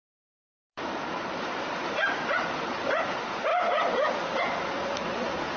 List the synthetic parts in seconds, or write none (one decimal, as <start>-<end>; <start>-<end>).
0.6-3.1; 3.5-4.4

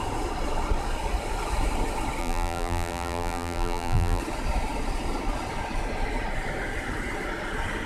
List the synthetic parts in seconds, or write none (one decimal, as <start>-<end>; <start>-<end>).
2.2-4.2